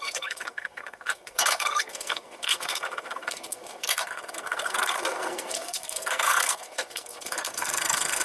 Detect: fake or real fake